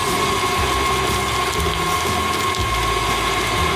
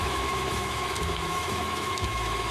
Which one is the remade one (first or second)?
second